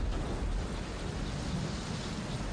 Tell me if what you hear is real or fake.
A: real